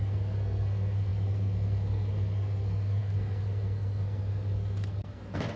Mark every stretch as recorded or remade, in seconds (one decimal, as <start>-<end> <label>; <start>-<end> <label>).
0.0-5.6 remade